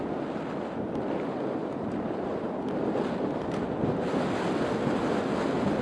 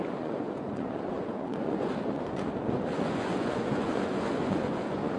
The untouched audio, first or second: first